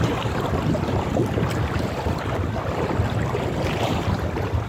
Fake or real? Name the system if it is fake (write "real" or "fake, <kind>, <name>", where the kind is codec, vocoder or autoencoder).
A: real